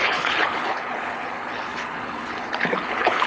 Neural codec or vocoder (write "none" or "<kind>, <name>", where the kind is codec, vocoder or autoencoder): codec, HILCodec